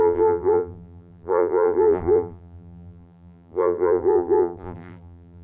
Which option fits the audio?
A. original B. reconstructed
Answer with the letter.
B